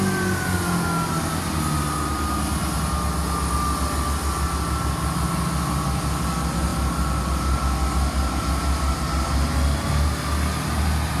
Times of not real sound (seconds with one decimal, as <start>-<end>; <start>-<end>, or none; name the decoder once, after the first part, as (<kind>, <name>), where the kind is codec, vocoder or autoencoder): none